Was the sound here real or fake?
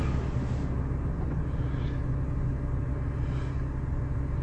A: real